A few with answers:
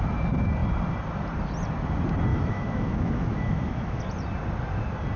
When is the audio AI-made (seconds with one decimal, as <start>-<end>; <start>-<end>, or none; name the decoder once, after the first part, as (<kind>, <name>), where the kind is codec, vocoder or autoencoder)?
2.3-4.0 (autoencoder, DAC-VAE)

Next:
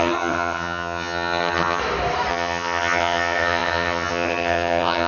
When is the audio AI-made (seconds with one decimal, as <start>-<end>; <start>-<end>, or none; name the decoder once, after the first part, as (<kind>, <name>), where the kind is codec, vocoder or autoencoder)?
0.0-1.8 (vocoder, HiFi-GAN); 2.3-5.1

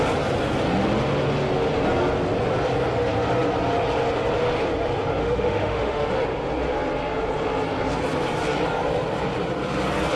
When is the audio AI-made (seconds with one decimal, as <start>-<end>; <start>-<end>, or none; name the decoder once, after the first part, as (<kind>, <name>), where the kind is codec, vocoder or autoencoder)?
5.2-6.1 (autoencoder, DAC-VAE)

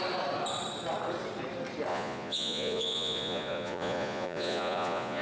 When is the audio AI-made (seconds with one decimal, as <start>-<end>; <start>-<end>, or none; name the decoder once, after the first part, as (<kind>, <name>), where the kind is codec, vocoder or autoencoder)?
1.9-5.2 (vocoder, Vocos)

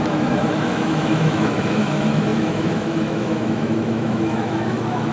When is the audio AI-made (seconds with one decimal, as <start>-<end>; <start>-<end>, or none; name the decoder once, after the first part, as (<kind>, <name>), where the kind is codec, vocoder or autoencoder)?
0.0-5.1 (autoencoder, DAC-VAE)

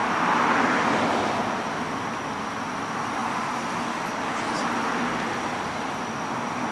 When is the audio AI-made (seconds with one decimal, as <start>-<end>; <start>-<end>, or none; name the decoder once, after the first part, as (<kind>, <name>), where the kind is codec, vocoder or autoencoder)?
none